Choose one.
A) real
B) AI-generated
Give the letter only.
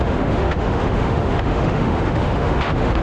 B